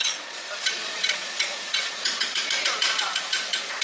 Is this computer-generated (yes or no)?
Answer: yes